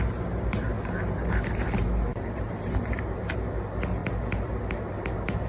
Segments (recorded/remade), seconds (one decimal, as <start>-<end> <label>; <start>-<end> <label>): 0.0-2.1 recorded; 2.1-3.3 remade; 3.3-5.5 recorded